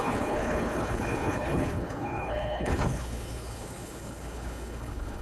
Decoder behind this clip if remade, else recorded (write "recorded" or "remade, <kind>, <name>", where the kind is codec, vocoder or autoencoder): remade, codec, HILCodec